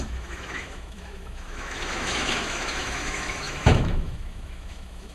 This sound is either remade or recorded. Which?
remade